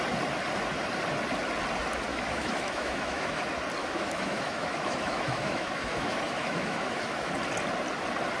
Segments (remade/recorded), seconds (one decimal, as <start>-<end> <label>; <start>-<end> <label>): 0.0-2.1 recorded; 2.1-3.4 remade; 3.4-3.8 recorded; 3.8-7.3 remade; 7.3-8.4 recorded